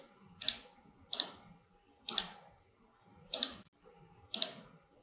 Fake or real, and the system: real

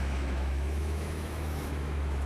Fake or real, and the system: fake, autoencoder, DAC-VAE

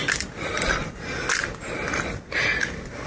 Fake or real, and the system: real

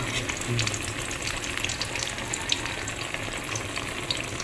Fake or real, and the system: real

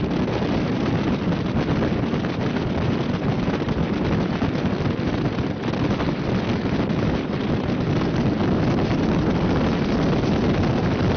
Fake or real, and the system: real